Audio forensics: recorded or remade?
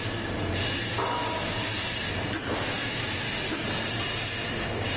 recorded